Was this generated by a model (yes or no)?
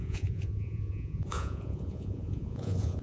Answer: yes